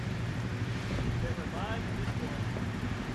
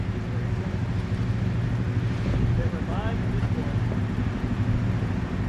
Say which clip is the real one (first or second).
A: second